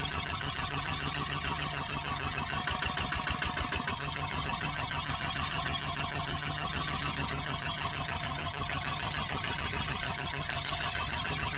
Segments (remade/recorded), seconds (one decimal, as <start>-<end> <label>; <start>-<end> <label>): 0.0-2.6 remade; 2.6-3.9 recorded; 3.9-11.6 remade